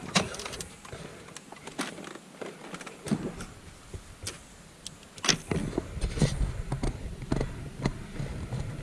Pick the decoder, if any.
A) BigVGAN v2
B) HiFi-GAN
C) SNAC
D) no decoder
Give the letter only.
D